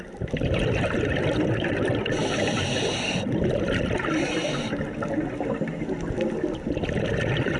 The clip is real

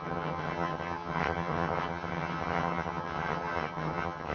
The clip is fake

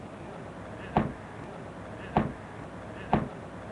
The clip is real